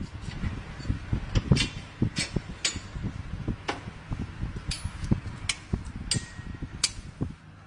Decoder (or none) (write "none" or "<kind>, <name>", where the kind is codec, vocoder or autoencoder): none